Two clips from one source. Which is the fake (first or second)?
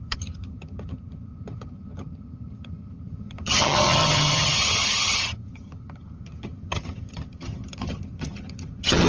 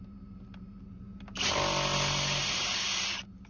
first